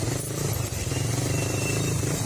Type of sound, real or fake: real